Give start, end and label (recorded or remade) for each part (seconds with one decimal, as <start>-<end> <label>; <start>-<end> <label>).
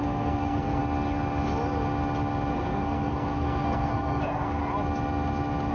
0.0-0.8 remade; 0.8-2.5 recorded; 2.5-4.6 remade; 4.6-5.7 recorded